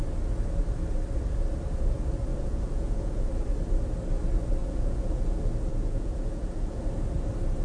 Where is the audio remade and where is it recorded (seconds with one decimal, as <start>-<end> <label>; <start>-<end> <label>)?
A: 0.0-2.3 recorded; 2.3-3.3 remade; 3.3-4.6 recorded; 4.6-5.2 remade; 5.2-5.7 recorded; 5.7-6.8 remade; 6.8-7.6 recorded